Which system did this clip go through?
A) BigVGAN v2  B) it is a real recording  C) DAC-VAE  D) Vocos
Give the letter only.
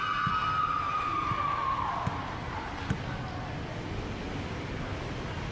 B